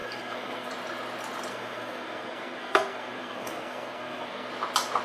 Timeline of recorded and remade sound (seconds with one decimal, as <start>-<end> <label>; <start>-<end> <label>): 0.0-0.7 remade; 0.7-1.5 recorded; 1.5-4.5 remade; 4.5-5.0 recorded